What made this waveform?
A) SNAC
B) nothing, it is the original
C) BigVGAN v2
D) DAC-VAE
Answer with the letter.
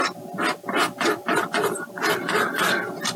B